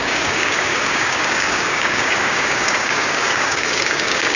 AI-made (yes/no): yes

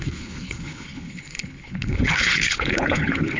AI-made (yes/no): yes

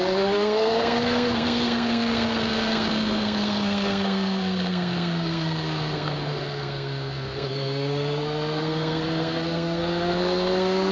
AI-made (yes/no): yes